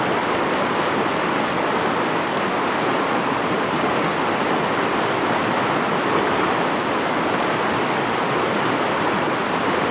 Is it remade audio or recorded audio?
recorded